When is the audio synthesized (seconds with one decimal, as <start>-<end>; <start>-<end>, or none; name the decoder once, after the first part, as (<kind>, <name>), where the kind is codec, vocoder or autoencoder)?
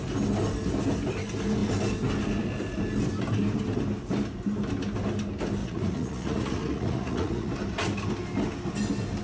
5.6-7.5 (vocoder, Vocos)